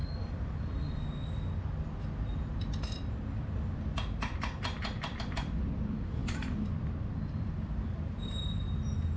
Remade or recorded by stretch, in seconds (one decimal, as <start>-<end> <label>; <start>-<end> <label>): 0.0-4.4 recorded; 4.4-9.2 remade